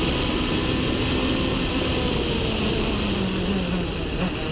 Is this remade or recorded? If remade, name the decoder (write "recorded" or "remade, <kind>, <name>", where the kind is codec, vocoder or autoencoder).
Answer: recorded